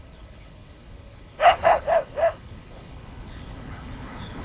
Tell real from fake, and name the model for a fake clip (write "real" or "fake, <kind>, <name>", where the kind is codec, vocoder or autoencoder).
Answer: fake, codec, HILCodec